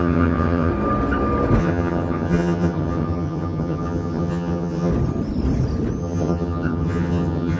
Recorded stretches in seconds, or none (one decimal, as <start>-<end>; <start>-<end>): 0.7-1.6; 4.9-6.0